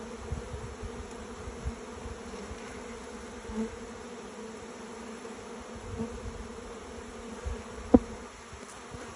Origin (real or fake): real